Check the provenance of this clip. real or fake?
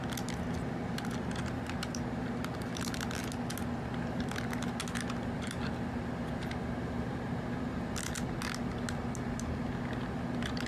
real